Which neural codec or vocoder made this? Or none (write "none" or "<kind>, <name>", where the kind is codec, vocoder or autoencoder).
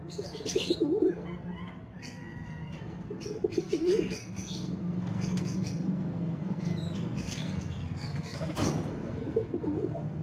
codec, SNAC